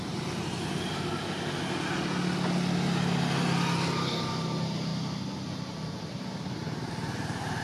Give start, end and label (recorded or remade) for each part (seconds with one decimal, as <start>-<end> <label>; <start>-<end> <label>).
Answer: 0.0-7.6 recorded